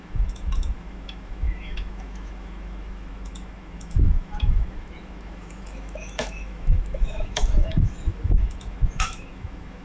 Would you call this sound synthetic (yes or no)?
yes